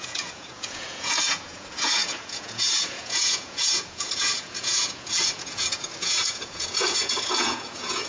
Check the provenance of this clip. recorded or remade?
remade